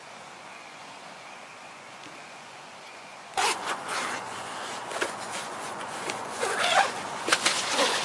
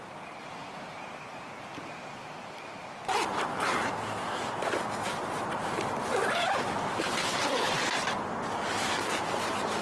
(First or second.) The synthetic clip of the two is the first